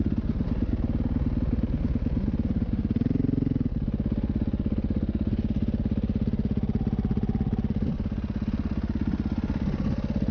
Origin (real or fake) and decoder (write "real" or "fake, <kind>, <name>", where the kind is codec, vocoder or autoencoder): real